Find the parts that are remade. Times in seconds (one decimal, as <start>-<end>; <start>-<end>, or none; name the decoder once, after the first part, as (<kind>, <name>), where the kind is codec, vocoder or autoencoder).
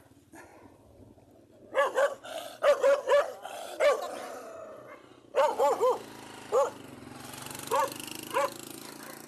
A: none